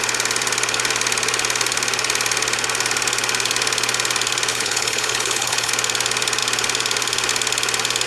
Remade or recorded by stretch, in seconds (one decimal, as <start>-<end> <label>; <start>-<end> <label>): 0.0-4.5 recorded; 4.5-5.7 remade; 5.7-8.1 recorded